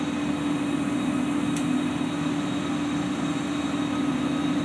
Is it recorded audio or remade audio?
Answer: recorded